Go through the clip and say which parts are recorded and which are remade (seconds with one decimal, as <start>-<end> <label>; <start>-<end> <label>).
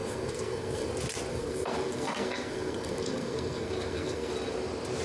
0.0-0.9 remade; 0.9-1.3 recorded; 1.3-4.3 remade; 4.3-5.0 recorded